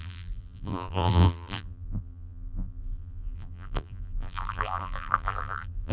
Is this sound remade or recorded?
remade